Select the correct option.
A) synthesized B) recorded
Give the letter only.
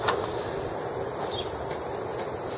B